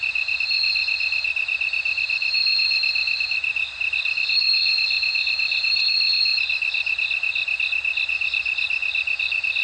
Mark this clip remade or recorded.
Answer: remade